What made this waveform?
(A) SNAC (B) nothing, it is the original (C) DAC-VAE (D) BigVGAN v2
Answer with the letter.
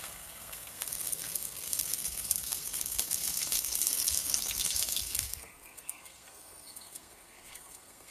A